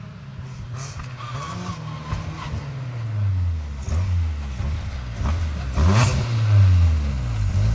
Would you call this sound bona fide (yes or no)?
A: yes